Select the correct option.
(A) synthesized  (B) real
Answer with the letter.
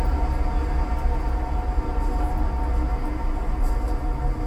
B